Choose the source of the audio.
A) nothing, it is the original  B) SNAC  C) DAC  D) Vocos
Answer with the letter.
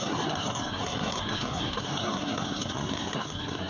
B